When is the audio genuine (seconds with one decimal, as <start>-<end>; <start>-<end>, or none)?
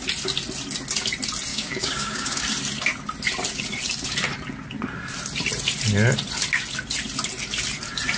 0.0-1.5; 2.4-8.2